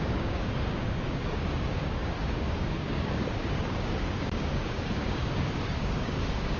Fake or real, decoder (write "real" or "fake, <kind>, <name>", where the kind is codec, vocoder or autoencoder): fake, codec, DAC